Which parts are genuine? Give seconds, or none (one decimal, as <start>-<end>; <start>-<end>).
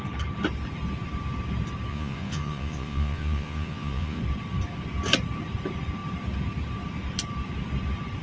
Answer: 0.0-1.9; 4.2-8.2